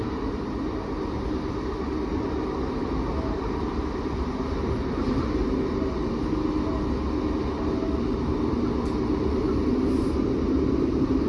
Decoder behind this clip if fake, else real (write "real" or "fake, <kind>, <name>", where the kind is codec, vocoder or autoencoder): real